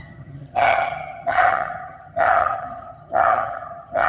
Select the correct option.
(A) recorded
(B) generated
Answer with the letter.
B